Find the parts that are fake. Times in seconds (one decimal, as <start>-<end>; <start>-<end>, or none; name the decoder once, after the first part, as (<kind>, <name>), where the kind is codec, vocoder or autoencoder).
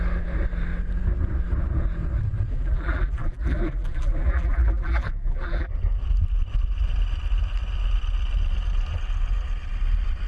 2.5-5.7 (vocoder, BigVGAN v2)